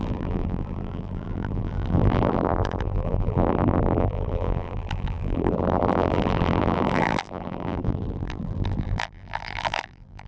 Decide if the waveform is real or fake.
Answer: fake